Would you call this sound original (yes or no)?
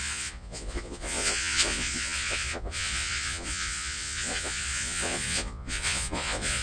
no